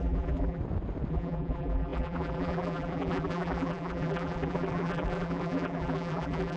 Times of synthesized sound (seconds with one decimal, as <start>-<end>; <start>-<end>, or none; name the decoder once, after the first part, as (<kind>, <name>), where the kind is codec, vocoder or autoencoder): 0.0-0.6 (vocoder, BigVGAN v2); 1.1-6.6